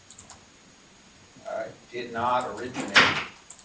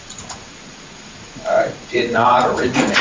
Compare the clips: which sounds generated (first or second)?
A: second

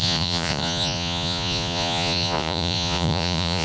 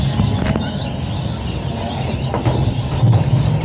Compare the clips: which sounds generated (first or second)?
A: first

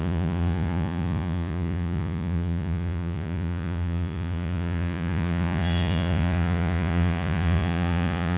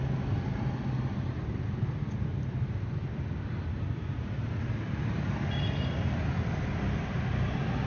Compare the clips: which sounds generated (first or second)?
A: first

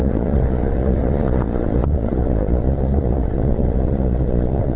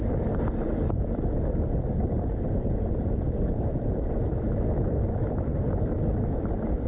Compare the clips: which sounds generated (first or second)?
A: first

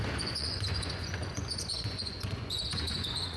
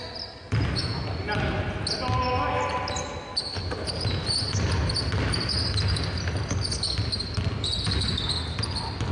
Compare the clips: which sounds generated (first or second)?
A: first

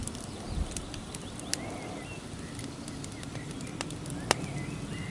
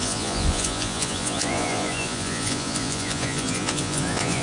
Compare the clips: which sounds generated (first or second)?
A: second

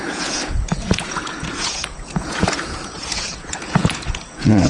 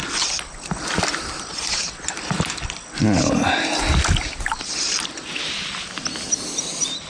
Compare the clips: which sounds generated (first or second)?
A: first